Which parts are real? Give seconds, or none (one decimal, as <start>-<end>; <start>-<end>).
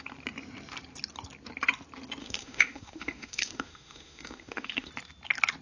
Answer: 0.0-2.2; 4.9-5.6